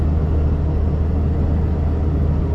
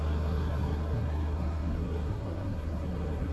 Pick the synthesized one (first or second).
second